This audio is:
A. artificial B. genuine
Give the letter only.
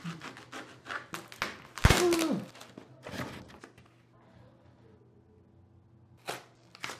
B